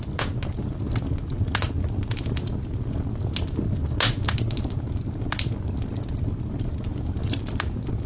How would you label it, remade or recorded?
recorded